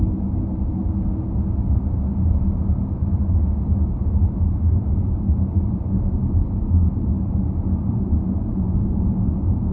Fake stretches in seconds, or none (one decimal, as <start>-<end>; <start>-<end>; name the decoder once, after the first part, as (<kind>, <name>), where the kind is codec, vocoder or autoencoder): 0.0-0.8 (vocoder, BigVGAN v2); 4.0-6.6; 7.9-9.7